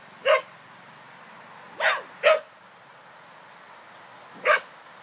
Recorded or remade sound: recorded